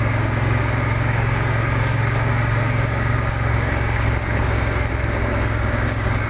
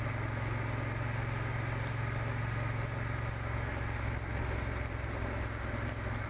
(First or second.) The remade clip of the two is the first